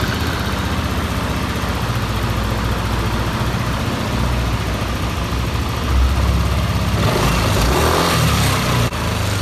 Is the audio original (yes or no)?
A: yes